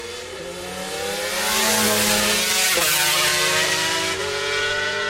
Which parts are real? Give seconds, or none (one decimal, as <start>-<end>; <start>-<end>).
0.0-2.5; 3.3-4.2